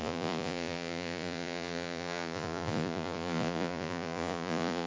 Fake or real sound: fake